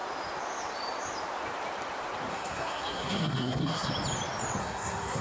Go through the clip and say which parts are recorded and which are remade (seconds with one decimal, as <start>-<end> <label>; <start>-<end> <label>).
0.0-2.3 recorded; 2.3-3.9 remade; 3.9-4.6 recorded; 4.6-5.2 remade